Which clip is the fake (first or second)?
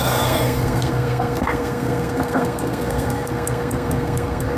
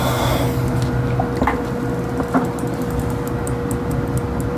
first